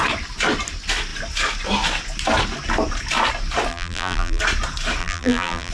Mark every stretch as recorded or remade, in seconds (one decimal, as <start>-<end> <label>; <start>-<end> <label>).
0.0-3.7 recorded; 3.7-4.4 remade; 4.4-5.0 recorded; 5.0-5.7 remade